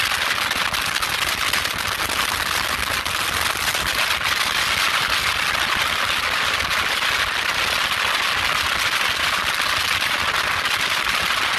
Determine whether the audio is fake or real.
real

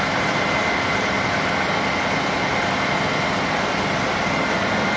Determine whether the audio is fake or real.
real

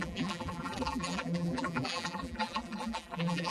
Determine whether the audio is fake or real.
fake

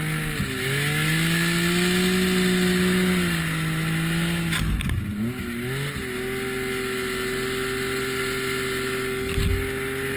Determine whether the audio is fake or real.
real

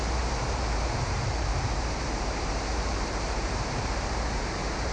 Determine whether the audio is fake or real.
fake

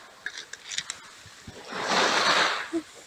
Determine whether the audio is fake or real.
real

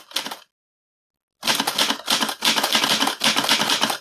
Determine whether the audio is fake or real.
real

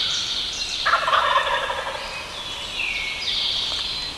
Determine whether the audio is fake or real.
fake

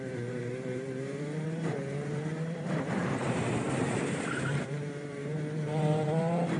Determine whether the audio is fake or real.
fake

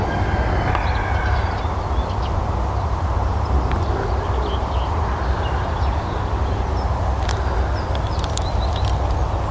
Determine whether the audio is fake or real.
real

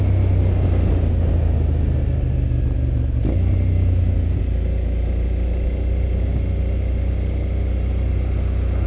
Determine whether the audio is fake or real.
real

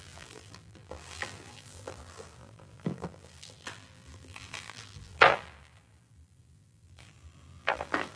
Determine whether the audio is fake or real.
fake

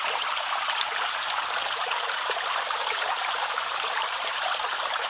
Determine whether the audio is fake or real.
fake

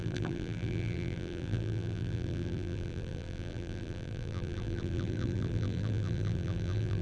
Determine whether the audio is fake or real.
fake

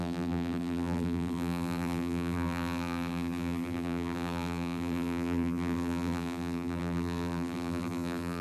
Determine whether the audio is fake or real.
fake